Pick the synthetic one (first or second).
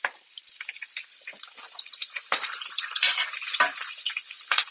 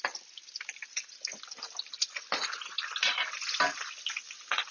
first